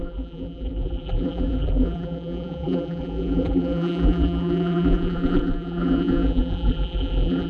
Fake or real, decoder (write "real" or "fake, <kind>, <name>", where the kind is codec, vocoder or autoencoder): fake, vocoder, BigVGAN v2